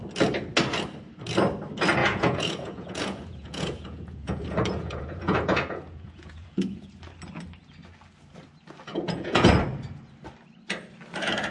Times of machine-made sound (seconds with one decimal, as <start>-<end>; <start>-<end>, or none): 2.0-7.0; 8.9-9.5